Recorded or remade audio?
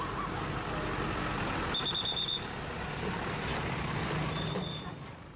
recorded